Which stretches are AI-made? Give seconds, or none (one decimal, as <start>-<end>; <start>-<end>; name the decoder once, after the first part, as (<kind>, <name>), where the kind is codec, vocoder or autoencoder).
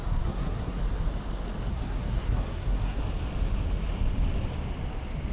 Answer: 0.0-0.8 (codec, SNAC); 1.7-3.0